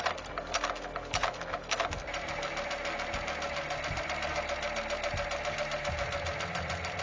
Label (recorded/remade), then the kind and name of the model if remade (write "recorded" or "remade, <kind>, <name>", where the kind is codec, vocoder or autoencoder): recorded